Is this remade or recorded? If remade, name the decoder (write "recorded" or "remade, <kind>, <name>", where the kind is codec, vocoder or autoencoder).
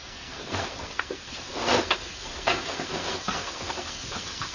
remade, codec, SNAC